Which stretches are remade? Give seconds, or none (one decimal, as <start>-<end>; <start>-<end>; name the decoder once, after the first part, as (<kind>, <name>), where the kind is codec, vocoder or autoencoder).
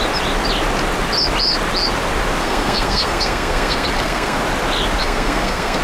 2.4-4.4 (codec, SNAC); 5.0-5.8